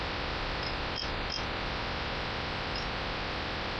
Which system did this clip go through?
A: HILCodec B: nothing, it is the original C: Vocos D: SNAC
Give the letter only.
B